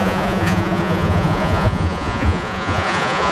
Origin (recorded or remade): remade